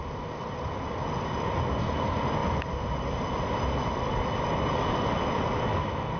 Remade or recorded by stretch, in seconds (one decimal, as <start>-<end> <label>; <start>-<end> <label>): 0.0-6.2 recorded